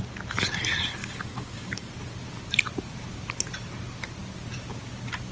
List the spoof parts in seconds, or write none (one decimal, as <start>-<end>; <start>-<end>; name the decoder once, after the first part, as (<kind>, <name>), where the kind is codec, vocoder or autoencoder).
1.0-1.9 (codec, DAC)